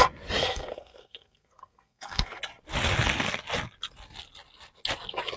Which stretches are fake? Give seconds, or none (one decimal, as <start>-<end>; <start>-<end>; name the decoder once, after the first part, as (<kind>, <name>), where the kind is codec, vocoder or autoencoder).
0.4-2.4 (codec, SNAC)